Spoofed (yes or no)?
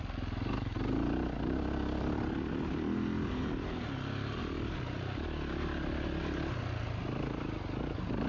no